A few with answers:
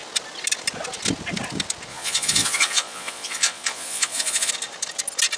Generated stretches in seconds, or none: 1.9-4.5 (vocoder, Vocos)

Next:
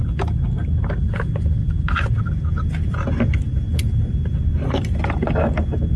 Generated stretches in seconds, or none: none

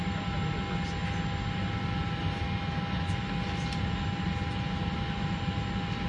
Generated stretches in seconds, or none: none

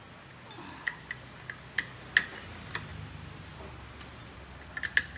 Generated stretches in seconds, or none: none

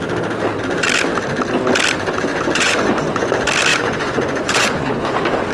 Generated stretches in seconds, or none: 2.3-3.3 (vocoder, Vocos); 3.7-5.0

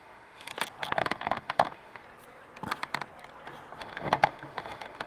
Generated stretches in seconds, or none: 0.0-0.5 (autoencoder, DAC-VAE); 1.0-2.0; 3.8-5.1

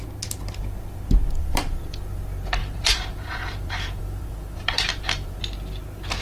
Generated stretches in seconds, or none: 1.2-1.8 (vocoder, BigVGAN v2); 2.6-5.4